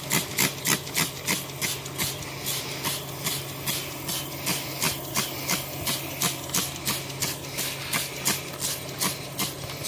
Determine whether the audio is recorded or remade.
recorded